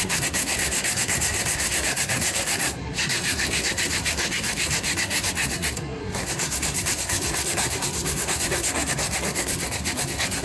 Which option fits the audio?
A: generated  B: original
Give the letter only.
A